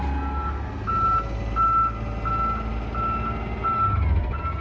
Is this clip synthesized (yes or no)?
no